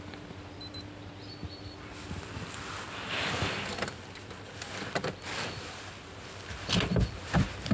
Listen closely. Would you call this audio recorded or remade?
recorded